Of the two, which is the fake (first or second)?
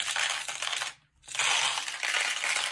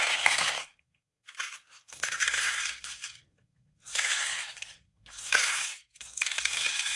second